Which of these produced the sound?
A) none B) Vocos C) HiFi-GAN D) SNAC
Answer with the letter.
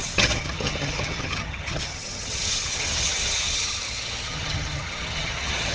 C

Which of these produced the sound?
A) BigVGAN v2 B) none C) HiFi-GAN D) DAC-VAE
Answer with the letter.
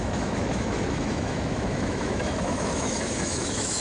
D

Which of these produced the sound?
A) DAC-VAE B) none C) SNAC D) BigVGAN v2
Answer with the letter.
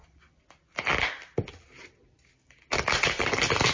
B